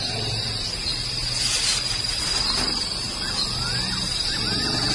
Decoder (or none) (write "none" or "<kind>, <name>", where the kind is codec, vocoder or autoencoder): none